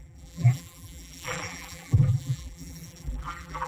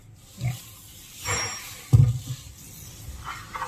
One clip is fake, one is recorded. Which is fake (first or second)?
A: first